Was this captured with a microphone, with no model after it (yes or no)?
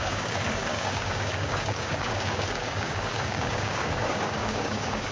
no